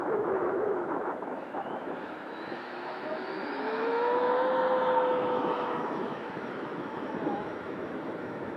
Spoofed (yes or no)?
yes